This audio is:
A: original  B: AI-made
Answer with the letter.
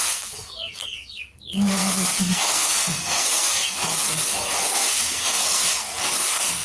B